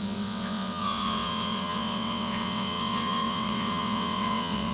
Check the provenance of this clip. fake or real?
fake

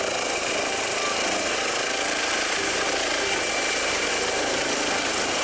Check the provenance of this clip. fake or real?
real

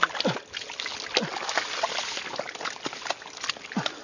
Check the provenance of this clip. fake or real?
real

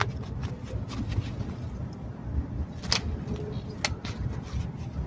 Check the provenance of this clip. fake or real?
real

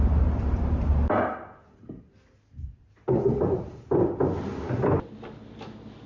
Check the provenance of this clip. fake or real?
real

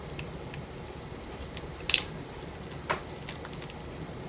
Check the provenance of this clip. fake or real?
real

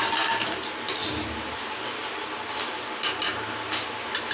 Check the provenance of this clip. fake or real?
real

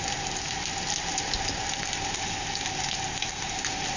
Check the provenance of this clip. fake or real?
real